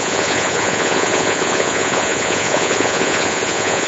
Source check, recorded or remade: remade